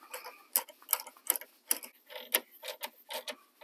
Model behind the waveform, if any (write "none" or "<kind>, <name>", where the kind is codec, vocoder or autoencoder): none